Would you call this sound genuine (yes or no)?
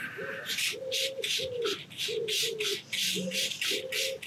yes